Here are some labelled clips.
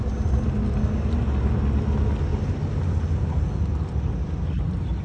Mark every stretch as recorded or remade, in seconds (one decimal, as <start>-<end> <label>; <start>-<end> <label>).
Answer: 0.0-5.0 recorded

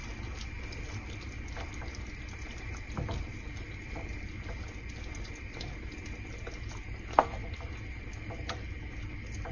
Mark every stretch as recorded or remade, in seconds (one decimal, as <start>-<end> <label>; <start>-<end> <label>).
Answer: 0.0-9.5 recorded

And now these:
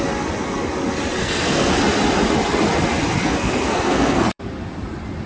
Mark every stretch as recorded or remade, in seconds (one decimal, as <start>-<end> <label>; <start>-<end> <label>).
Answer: 0.0-1.2 recorded; 1.2-1.7 remade; 1.7-3.2 recorded; 3.2-4.4 remade; 4.4-5.3 recorded

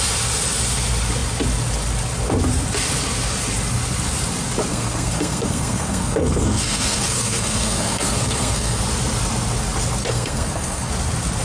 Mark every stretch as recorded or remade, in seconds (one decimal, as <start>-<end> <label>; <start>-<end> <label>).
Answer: 0.0-4.7 recorded; 4.7-8.8 remade; 8.8-10.0 recorded; 10.0-10.9 remade; 10.9-11.4 recorded

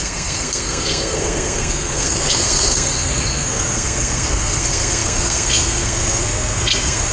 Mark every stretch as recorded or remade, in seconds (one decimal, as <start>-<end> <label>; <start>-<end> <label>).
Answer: 0.0-7.1 remade